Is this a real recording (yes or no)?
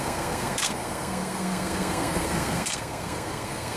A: no